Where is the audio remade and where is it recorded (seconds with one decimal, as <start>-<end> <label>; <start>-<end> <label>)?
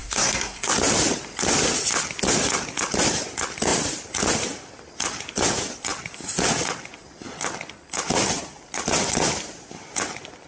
0.0-0.7 remade; 0.7-10.5 recorded